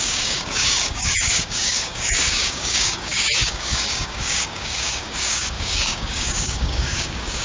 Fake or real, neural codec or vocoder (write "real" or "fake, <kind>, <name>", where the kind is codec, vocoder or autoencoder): fake, codec, DAC